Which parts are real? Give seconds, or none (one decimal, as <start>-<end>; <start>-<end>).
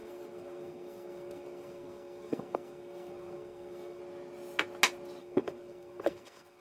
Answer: 4.0-5.2